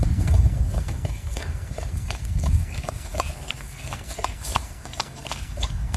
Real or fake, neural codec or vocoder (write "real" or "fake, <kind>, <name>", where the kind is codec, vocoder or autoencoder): fake, codec, SNAC